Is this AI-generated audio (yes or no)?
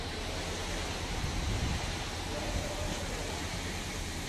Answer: yes